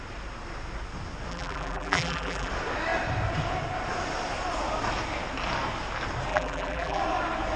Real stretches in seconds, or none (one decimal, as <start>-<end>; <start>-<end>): 0.0-1.3; 2.5-6.3; 7.0-7.6